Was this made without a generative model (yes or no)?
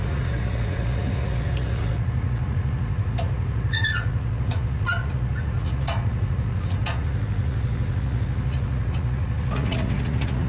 no